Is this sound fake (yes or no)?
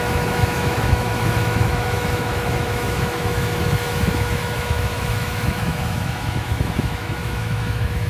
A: yes